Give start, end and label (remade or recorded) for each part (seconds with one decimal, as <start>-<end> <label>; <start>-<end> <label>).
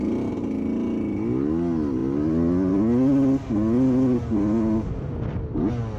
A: 0.0-6.0 recorded